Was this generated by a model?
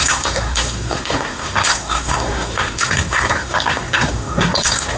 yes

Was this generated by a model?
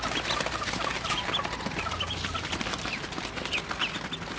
no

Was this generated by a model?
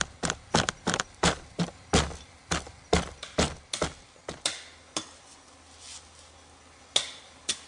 no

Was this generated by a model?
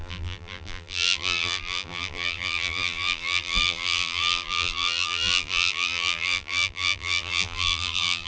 yes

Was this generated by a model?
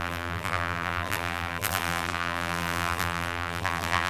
yes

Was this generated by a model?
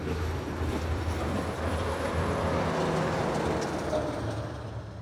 no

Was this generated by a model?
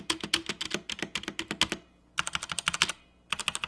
no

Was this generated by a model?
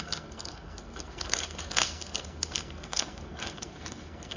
yes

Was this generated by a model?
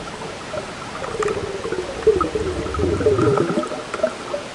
no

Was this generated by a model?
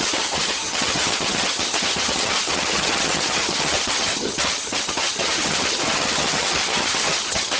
yes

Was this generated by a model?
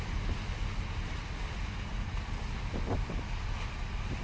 no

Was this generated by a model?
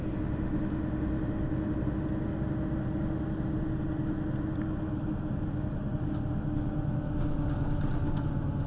no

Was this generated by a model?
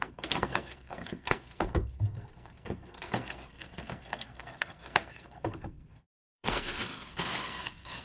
yes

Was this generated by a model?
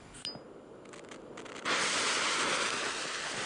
no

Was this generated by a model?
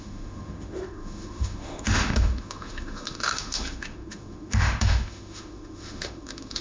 yes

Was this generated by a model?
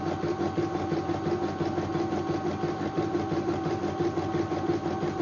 no